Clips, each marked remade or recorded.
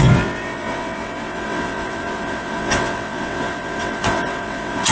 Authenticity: remade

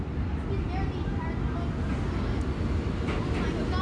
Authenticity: recorded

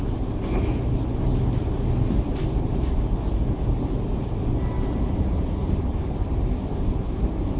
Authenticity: recorded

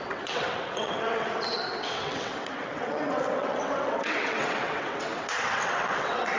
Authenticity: remade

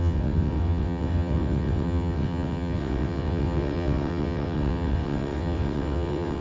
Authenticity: remade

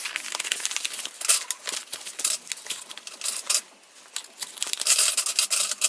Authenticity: recorded